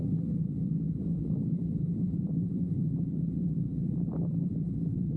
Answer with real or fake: fake